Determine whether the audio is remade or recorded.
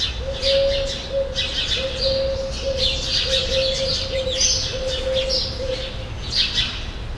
recorded